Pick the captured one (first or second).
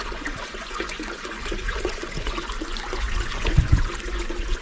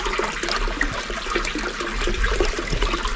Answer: second